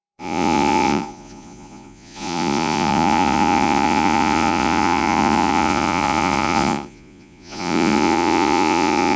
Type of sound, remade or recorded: remade